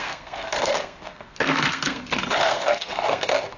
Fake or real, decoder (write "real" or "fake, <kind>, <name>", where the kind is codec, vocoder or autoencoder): fake, codec, SNAC